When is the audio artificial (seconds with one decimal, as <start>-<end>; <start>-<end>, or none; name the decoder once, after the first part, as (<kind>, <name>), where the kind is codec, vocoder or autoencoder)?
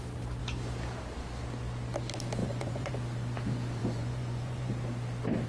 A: 2.4-2.9 (vocoder, Vocos); 3.8-4.7